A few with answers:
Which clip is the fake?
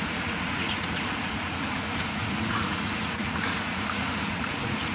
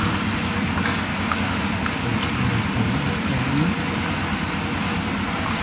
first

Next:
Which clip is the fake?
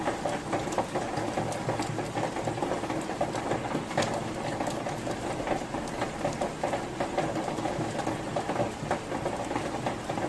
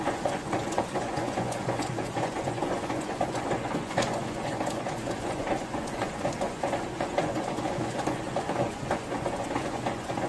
second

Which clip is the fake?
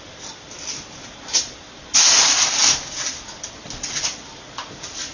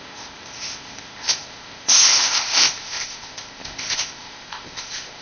second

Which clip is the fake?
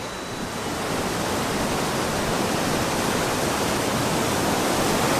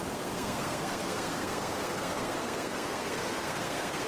second